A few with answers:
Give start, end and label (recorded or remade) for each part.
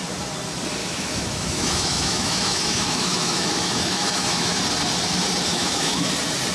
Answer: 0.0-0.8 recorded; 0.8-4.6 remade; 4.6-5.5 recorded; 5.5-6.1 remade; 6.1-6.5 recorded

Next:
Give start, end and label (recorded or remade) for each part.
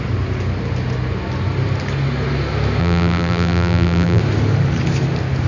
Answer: 0.0-2.8 recorded; 2.8-4.2 remade; 4.2-5.5 recorded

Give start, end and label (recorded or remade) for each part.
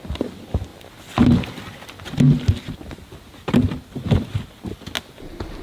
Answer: 0.0-5.6 recorded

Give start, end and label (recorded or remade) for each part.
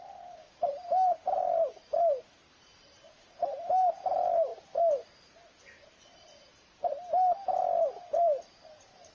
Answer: 0.0-4.5 remade; 4.5-5.2 recorded; 5.2-7.4 remade; 7.4-8.0 recorded; 8.0-9.1 remade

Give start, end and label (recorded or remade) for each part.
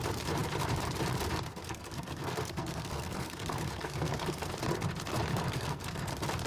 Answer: 0.0-1.5 recorded; 1.5-4.5 remade; 4.5-5.3 recorded; 5.3-6.1 remade; 6.1-6.5 recorded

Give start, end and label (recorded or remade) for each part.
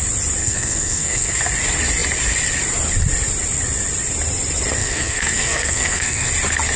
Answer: 0.0-0.4 recorded; 0.4-1.4 remade; 1.4-4.8 recorded; 4.8-6.3 remade; 6.3-6.8 recorded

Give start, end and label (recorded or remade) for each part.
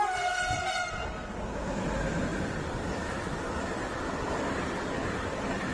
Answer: 0.0-5.7 recorded